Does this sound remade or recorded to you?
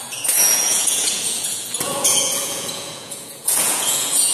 remade